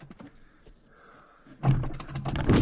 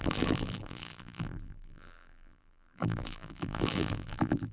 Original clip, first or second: first